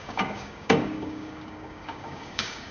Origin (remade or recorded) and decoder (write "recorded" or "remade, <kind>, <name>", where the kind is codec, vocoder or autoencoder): remade, codec, DAC